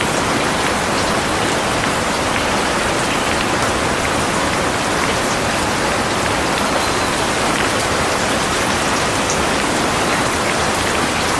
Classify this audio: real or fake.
real